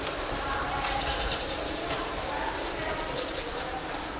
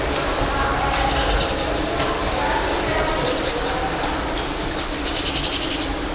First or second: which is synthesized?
first